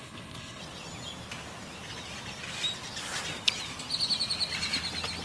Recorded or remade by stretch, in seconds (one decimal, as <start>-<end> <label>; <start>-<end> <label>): 0.0-0.6 remade; 0.6-5.2 recorded